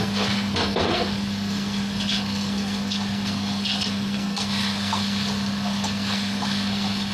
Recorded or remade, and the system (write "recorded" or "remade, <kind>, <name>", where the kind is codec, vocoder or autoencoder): remade, codec, SNAC